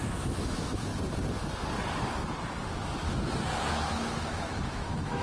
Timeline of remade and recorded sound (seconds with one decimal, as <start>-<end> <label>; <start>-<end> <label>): 0.0-0.9 remade; 0.9-3.7 recorded; 3.7-5.2 remade